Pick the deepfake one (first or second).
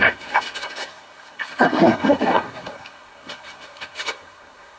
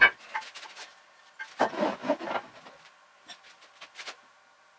first